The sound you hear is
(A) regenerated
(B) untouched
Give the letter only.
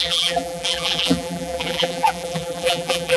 A